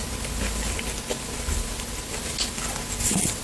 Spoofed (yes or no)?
no